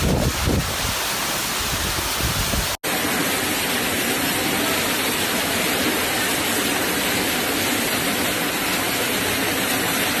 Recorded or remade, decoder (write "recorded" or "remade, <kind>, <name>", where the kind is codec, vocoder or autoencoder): recorded